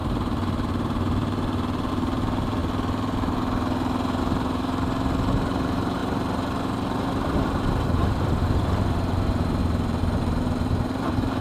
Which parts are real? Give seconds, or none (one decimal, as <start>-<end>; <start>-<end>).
2.6-4.2